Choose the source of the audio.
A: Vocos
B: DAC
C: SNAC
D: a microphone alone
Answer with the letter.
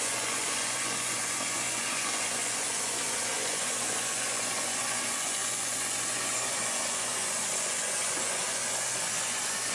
A